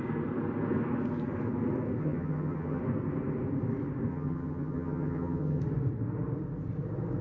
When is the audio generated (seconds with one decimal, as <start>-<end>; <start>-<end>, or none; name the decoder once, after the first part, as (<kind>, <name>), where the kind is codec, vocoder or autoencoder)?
2.0-2.8 (vocoder, HiFi-GAN); 4.1-5.6